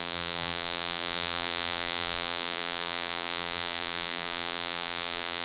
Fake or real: fake